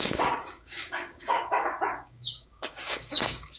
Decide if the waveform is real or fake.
fake